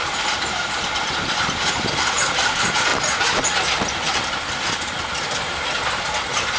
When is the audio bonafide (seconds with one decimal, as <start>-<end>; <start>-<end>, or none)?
2.9-5.2